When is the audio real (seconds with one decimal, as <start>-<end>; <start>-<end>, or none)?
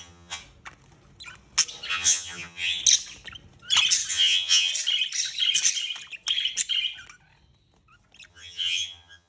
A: 0.4-1.9; 2.8-4.1; 4.7-8.3